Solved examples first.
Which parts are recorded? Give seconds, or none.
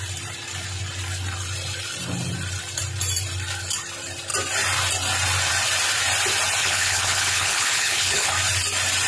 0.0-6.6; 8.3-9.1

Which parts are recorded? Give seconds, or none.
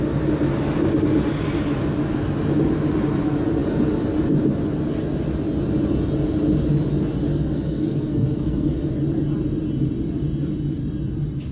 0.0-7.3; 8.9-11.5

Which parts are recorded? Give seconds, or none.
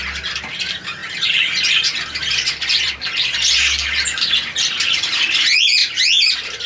0.0-6.7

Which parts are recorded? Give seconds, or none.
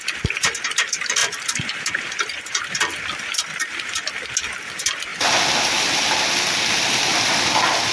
0.0-1.2; 3.9-5.1; 6.2-7.1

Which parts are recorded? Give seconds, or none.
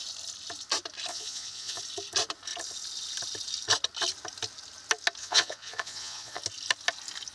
0.0-1.1; 1.8-5.2; 6.4-7.3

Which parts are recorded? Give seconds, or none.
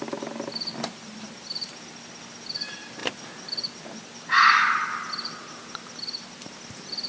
0.0-7.1